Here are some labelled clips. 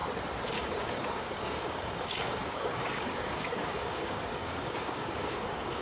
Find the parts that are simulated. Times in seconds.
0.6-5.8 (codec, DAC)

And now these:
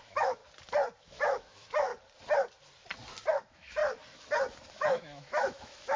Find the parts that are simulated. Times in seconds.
0.0-0.4 (autoencoder, DAC-VAE); 1.0-1.9; 3.3-3.8; 4.7-6.0

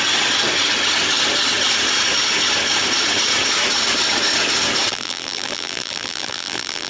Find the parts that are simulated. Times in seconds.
4.9-6.9 (vocoder, BigVGAN v2)

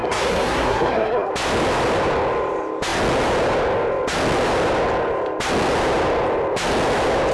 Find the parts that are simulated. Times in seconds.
0.0-1.3 (codec, SNAC)

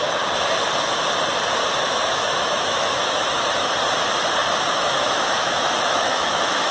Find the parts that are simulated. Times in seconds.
1.8-3.7 (autoencoder, DAC-VAE); 4.4-6.7